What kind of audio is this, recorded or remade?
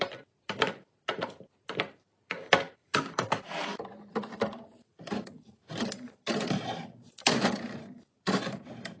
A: remade